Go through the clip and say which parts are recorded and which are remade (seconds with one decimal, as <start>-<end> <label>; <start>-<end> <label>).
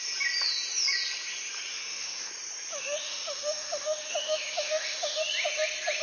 0.0-1.7 recorded; 1.7-2.3 remade; 2.3-2.7 recorded; 2.7-5.2 remade; 5.2-6.0 recorded